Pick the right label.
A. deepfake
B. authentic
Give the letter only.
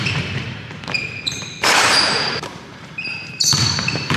A